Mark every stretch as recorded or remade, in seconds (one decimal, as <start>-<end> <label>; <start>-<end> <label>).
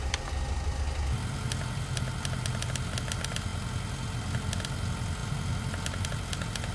0.0-6.7 recorded